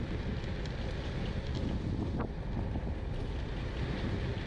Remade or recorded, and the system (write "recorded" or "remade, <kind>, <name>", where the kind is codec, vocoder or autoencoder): recorded